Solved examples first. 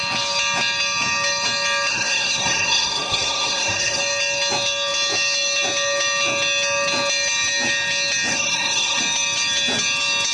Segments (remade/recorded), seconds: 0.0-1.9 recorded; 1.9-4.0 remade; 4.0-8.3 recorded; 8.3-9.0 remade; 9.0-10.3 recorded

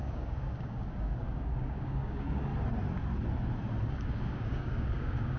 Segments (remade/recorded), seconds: 0.0-2.5 remade; 2.5-3.9 recorded; 3.9-5.4 remade

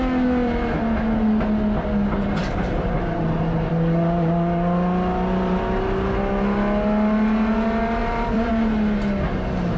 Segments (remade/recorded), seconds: 0.0-2.4 recorded; 2.4-3.7 remade; 3.7-8.0 recorded; 8.0-8.5 remade; 8.5-9.8 recorded

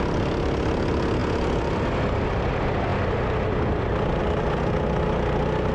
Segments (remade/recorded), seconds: 0.0-5.7 recorded

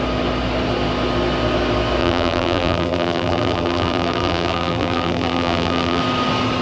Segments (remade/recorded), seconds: 0.0-2.0 recorded; 2.0-6.0 remade; 6.0-6.6 recorded